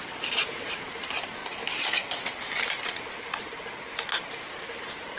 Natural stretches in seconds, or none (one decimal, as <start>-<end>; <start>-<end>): 1.4-4.5